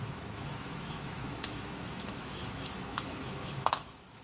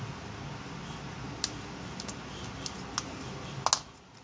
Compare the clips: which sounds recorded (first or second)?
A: second